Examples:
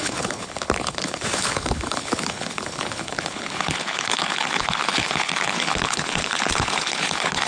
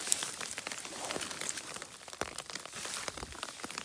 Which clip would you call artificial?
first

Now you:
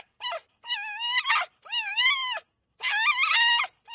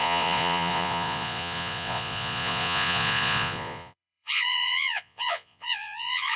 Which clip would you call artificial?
second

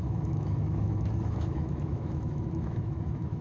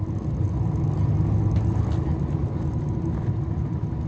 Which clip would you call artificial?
first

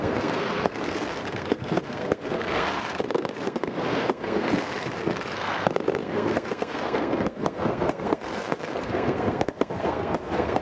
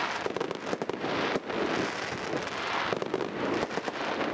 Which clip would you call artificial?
first